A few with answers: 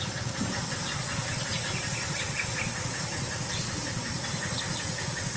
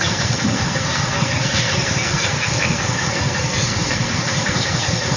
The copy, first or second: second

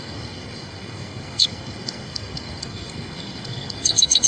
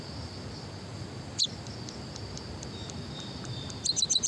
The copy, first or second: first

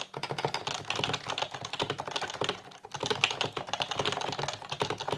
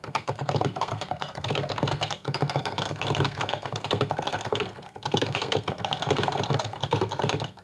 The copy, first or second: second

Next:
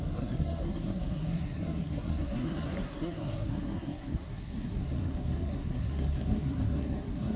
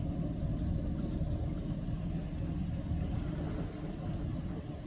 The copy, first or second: first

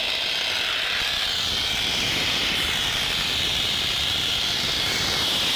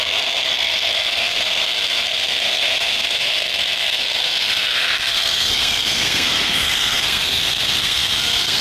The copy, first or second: second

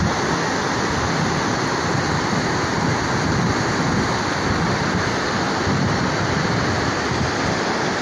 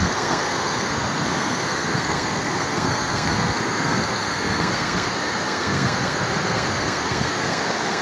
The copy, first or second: second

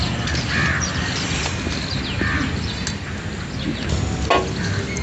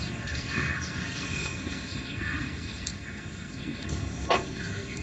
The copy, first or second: second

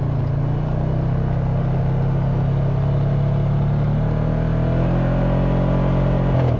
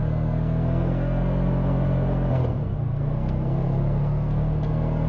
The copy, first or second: second